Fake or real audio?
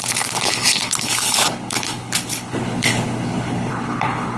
fake